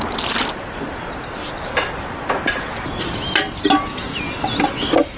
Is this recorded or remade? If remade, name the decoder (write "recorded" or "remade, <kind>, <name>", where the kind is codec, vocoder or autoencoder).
recorded